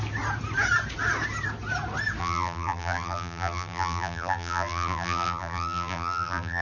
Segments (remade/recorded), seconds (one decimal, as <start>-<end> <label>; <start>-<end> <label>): 0.0-2.2 recorded; 2.2-6.6 remade